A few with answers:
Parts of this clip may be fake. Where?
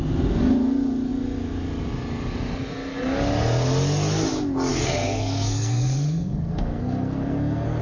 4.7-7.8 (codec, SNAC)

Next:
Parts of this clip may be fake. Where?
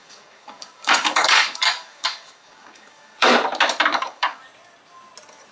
0.0-3.3 (codec, DAC); 3.9-4.4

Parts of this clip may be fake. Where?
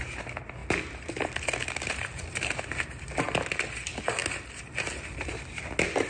0.6-3.2 (vocoder, BigVGAN v2); 4.2-5.5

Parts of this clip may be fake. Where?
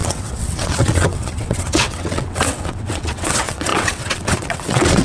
0.0-5.0 (vocoder, WaveNeXt)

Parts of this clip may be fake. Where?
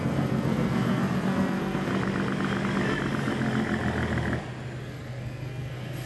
0.0-1.9 (codec, SNAC); 4.8-6.1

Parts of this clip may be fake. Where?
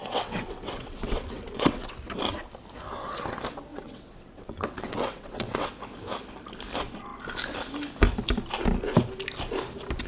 0.0-1.9 (vocoder, WaveNeXt); 3.7-5.7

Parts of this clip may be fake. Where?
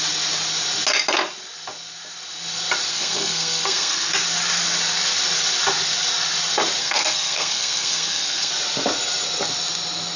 2.9-4.1 (codec, SNAC); 6.8-8.5